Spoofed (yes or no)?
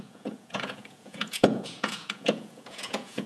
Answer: yes